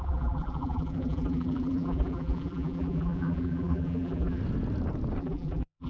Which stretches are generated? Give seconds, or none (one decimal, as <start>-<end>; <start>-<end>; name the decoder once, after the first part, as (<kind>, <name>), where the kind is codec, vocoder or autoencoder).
0.0-4.4 (vocoder, BigVGAN v2); 5.2-5.9